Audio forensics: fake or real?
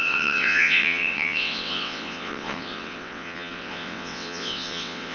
fake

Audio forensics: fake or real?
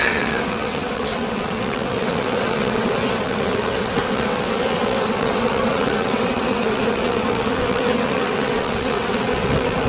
fake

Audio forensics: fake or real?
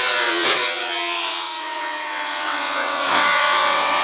fake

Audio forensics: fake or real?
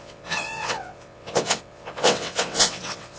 fake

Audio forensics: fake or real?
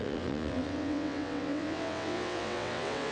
fake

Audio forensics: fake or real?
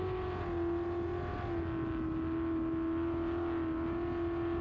real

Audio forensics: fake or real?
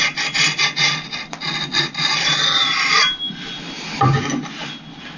real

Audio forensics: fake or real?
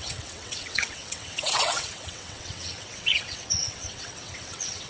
fake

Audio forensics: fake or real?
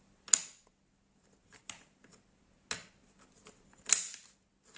real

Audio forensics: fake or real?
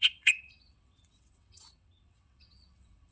fake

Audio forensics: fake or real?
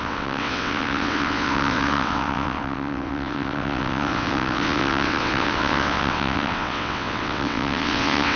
fake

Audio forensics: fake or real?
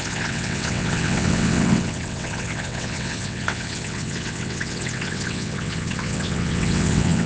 fake